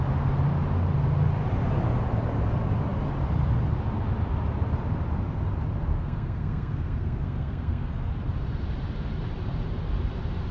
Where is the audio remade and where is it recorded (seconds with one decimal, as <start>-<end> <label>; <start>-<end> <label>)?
0.0-5.9 recorded; 5.9-8.1 remade; 8.1-10.5 recorded